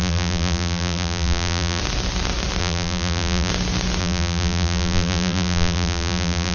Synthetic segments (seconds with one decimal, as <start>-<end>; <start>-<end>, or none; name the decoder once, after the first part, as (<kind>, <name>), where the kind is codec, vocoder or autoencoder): 0.0-1.8 (vocoder, BigVGAN v2); 2.6-3.5; 4.0-6.5

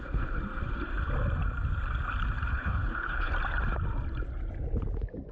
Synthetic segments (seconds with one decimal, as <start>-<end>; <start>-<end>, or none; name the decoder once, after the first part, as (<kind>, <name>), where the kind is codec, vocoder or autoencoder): 0.0-0.4 (codec, HILCodec); 2.5-3.3

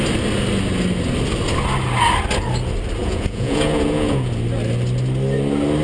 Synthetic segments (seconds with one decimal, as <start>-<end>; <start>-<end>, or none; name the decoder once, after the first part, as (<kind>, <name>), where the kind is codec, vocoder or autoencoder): 3.0-4.3 (vocoder, Vocos)

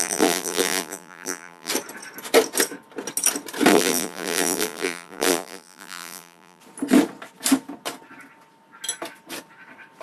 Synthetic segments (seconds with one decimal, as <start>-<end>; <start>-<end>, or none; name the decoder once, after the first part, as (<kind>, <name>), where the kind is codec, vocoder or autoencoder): 0.0-1.7 (vocoder, BigVGAN v2); 3.7-6.6

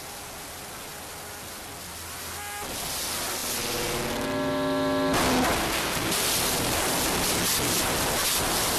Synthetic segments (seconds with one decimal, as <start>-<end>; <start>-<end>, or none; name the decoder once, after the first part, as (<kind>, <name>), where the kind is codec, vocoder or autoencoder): none

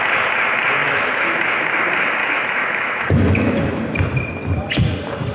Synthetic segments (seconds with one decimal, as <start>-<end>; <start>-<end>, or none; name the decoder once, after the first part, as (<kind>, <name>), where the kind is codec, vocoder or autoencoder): 0.8-1.5 (autoencoder, DAC-VAE); 2.2-3.8